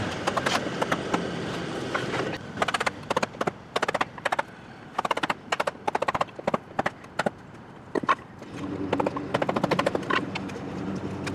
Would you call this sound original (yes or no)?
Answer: yes